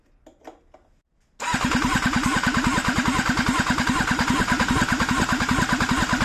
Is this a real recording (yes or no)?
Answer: yes